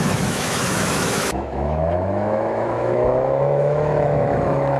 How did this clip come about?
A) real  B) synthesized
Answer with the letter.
B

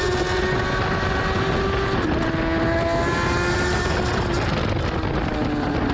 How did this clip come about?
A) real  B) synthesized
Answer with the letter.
A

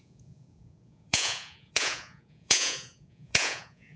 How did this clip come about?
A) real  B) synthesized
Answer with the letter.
B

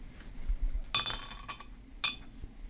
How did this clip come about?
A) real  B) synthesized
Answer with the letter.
A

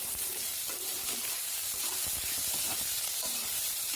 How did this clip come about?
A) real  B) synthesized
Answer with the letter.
B